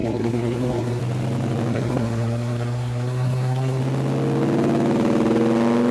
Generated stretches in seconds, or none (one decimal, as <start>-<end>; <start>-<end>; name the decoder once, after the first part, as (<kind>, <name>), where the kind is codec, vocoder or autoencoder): 0.0-1.0 (codec, SNAC); 1.7-3.8